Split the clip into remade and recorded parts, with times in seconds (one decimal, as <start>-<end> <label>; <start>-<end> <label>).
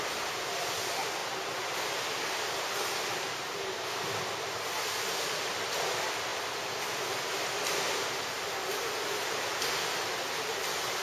0.0-11.0 recorded